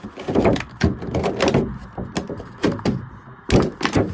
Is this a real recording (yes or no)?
yes